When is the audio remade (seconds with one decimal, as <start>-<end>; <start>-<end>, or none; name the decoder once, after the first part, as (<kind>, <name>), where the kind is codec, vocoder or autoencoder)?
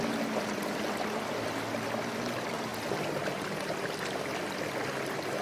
none